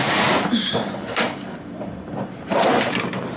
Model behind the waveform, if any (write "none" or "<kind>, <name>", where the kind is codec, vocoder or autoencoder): vocoder, BigVGAN v2